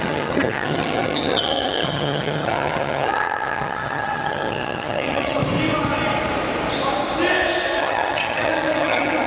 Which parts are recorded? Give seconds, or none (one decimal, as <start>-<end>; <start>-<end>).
5.4-7.8